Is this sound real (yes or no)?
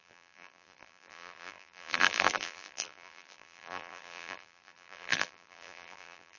no